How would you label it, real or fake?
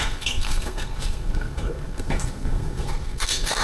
fake